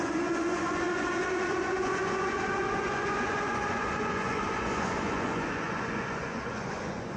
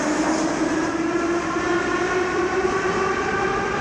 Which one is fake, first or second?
first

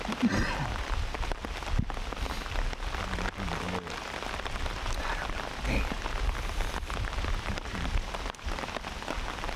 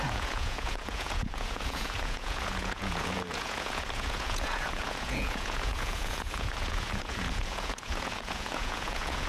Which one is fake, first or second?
second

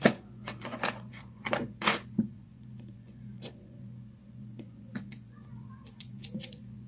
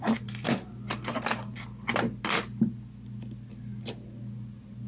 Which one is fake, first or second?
first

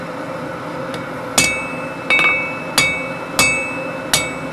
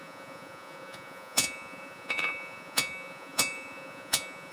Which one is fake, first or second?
second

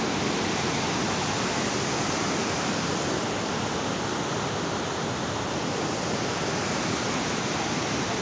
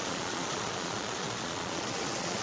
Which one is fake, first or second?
second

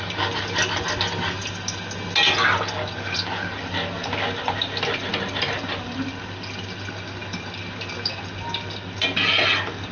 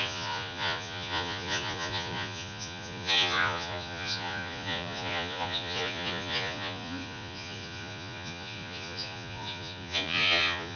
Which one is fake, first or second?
second